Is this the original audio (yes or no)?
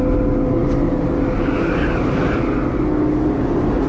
yes